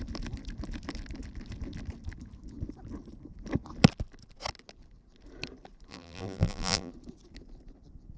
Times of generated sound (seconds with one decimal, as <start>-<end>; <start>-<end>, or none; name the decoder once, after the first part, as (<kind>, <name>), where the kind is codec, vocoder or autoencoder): 5.9-6.9 (vocoder, BigVGAN v2)

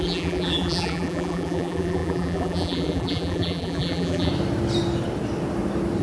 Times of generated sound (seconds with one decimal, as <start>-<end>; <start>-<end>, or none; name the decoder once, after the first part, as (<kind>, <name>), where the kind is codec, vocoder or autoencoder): 0.0-4.3 (vocoder, BigVGAN v2)

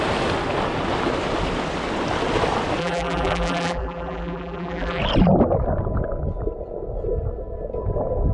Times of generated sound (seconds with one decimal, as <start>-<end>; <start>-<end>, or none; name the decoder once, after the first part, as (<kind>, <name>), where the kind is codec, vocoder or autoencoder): 2.8-5.0 (vocoder, BigVGAN v2)

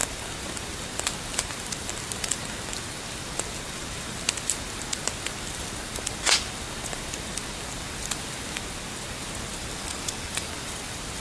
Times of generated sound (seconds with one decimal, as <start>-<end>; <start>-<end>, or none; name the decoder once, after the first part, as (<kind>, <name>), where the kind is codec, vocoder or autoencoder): 9.5-10.5 (vocoder, BigVGAN v2)

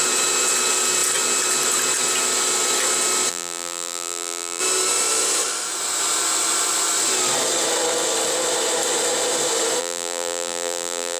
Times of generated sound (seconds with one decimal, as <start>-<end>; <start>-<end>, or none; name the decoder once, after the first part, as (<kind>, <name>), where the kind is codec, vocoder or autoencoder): 3.3-4.6 (vocoder, BigVGAN v2); 9.8-11.2